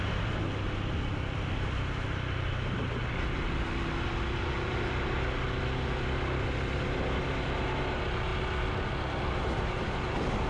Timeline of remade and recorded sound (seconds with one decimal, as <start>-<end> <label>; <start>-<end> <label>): 0.0-10.5 recorded